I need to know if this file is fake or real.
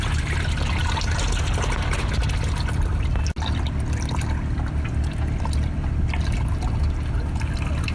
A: real